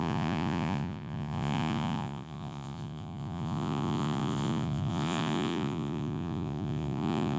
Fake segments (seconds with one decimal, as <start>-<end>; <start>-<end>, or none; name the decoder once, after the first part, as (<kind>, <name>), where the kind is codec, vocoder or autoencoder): 0.0-7.4 (vocoder, Vocos)